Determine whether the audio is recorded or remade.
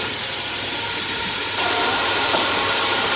remade